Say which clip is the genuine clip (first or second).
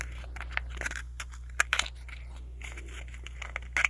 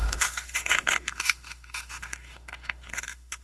first